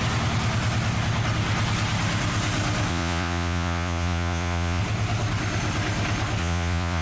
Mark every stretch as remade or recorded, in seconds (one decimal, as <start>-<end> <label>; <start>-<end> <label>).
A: 0.0-2.9 recorded; 2.9-4.8 remade; 4.8-6.4 recorded; 6.4-7.0 remade